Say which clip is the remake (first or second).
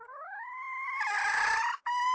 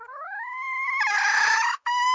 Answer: second